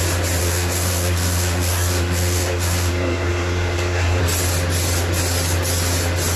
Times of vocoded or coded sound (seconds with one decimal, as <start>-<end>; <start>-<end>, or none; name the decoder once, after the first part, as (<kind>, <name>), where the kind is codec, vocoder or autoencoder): 0.4-4.2 (codec, SNAC)